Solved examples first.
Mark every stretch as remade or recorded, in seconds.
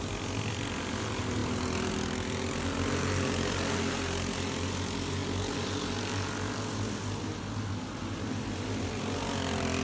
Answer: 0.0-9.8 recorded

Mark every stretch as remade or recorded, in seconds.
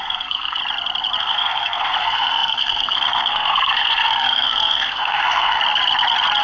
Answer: 0.0-0.6 remade; 0.6-1.2 recorded; 1.2-5.6 remade; 5.6-6.4 recorded